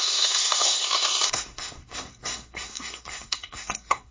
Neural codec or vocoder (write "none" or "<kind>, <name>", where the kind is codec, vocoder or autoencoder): codec, SNAC